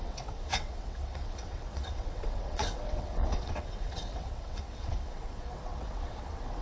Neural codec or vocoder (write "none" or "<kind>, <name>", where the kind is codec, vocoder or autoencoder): vocoder, WaveNeXt